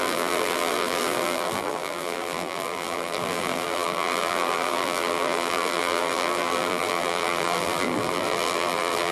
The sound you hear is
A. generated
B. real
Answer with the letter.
A